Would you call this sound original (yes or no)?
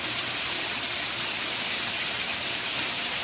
no